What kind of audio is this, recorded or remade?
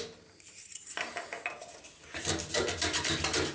recorded